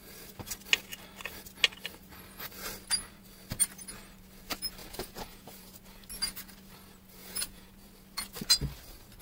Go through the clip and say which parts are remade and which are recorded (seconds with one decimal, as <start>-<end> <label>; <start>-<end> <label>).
0.0-4.8 recorded; 4.8-5.8 remade; 5.8-7.2 recorded; 7.2-7.7 remade; 7.7-9.2 recorded